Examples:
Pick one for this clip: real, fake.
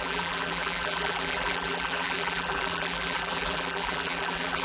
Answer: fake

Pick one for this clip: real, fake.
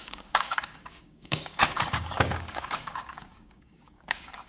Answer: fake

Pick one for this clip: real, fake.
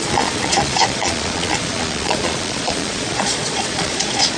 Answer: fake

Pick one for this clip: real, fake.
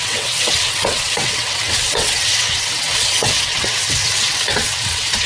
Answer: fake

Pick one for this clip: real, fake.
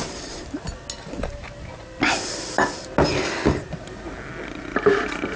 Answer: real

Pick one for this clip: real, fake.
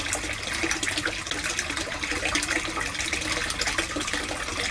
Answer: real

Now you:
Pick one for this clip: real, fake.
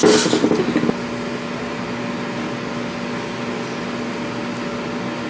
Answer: real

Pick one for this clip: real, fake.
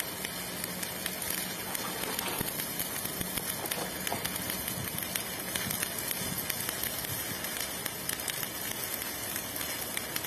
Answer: real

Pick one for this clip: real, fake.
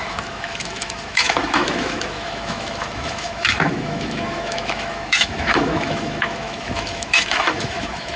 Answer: fake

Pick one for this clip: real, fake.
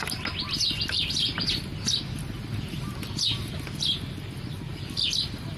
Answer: real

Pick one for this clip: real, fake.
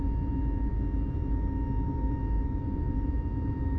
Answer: real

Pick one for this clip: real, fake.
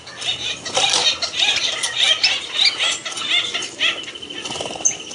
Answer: real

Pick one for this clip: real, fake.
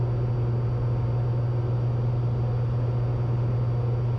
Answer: real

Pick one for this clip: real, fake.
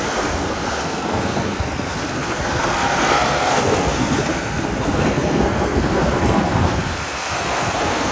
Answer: fake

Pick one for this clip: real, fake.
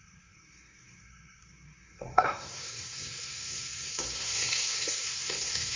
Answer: fake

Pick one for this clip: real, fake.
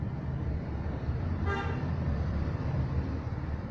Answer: fake